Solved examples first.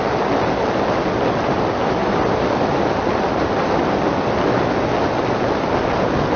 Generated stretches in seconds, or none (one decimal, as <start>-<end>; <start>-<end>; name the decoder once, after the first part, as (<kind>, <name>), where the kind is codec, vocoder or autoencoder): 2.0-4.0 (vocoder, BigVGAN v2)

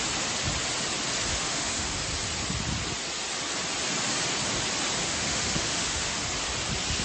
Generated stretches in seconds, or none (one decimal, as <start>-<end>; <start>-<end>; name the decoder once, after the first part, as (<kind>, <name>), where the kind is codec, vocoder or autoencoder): 1.3-2.0 (autoencoder, DAC-VAE); 5.0-6.2

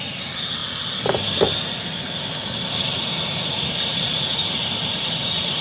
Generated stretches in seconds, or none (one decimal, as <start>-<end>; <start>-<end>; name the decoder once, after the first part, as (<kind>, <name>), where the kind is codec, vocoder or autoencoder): 0.0-0.6 (vocoder, BigVGAN v2); 2.8-5.6